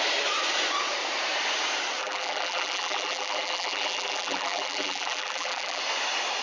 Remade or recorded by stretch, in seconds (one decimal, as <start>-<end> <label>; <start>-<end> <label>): 0.0-2.0 recorded; 2.0-5.8 remade; 5.8-6.4 recorded